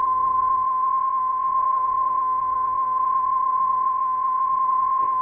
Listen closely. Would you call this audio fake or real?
fake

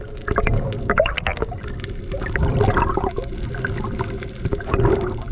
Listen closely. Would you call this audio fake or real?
real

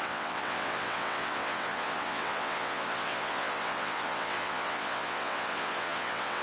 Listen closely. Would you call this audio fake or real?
fake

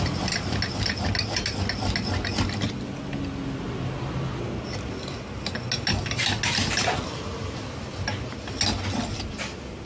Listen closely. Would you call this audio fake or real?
real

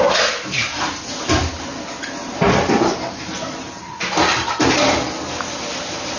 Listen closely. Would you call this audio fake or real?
real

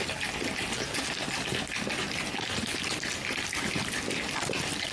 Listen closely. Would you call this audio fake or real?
real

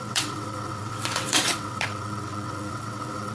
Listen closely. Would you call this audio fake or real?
fake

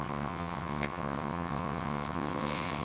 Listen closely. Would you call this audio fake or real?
fake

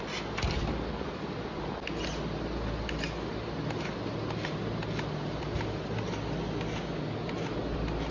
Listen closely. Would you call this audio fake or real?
real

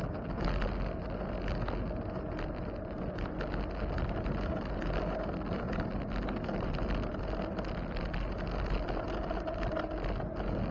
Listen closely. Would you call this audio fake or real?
real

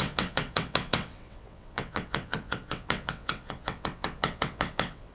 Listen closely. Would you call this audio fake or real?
fake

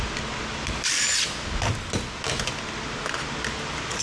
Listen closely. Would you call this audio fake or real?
real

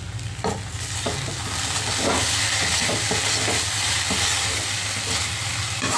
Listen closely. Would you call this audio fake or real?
real